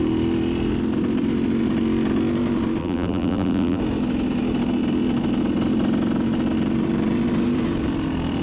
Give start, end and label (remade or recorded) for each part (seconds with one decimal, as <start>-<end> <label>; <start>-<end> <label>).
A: 0.0-2.8 recorded; 2.8-3.8 remade; 3.8-8.4 recorded